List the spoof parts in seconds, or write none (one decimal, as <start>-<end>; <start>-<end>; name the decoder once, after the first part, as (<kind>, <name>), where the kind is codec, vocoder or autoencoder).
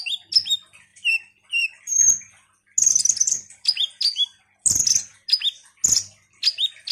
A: 0.9-1.8 (vocoder, BigVGAN v2); 3.2-3.8